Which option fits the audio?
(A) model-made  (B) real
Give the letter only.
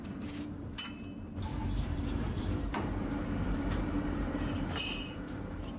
A